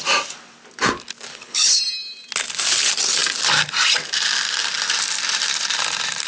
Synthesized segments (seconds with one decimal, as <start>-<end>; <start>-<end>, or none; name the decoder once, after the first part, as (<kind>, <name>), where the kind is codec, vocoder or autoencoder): 1.3-1.8 (codec, HILCodec)